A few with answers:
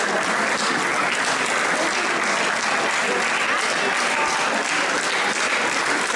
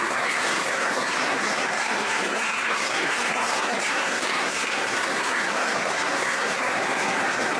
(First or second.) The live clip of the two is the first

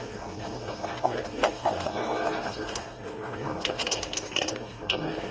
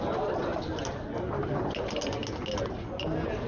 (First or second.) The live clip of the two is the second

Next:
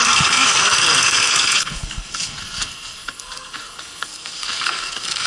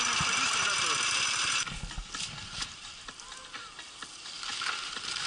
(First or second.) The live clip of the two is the second